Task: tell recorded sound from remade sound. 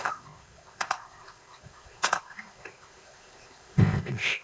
remade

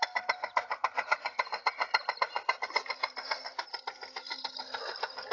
recorded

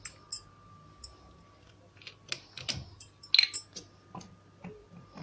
recorded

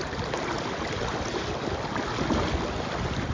recorded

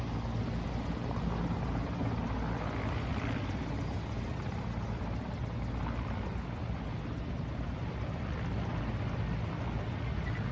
recorded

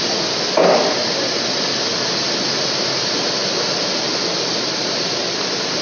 recorded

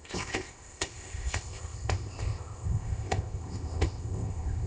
remade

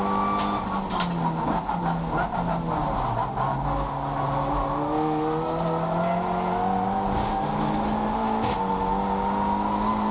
recorded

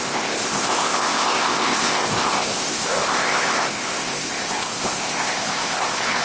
remade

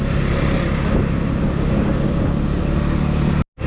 recorded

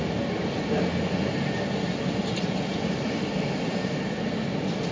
recorded